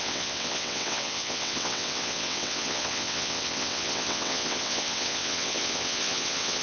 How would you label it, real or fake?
fake